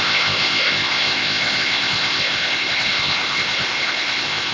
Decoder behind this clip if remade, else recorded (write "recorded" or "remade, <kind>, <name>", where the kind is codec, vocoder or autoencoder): remade, codec, ZipCodec